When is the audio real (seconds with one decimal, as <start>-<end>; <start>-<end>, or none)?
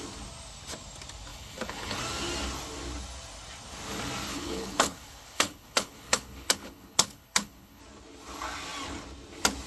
0.0-1.3; 2.0-4.3; 7.8-9.7